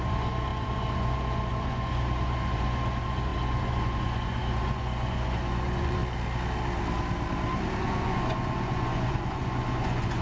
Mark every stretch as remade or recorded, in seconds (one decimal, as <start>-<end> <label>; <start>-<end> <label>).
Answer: 0.0-6.0 remade; 6.0-7.8 recorded; 7.8-10.2 remade